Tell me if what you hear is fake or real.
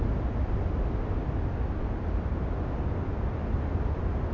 real